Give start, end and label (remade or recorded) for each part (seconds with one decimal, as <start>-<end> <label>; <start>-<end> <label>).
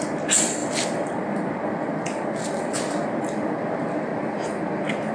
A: 0.0-4.1 remade; 4.1-5.1 recorded